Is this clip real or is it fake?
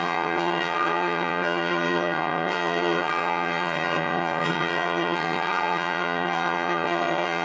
fake